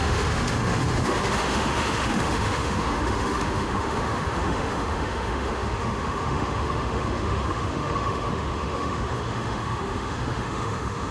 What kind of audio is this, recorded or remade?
remade